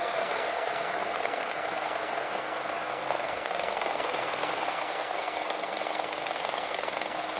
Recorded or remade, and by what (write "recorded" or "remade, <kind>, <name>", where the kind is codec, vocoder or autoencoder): remade, codec, SNAC